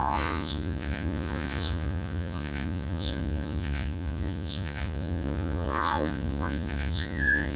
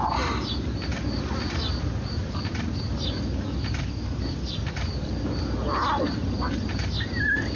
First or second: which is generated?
first